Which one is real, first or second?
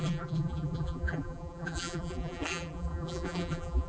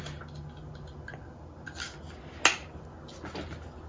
second